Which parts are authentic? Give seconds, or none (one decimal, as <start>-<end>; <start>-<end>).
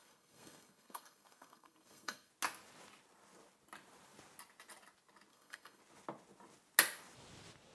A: 2.3-5.3; 5.8-7.7